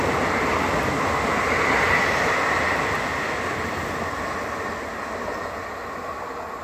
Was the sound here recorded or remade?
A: recorded